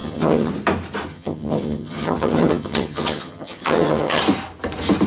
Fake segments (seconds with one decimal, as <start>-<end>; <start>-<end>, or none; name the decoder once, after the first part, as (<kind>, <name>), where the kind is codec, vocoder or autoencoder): 0.0-0.5 (vocoder, HiFi-GAN); 1.1-4.2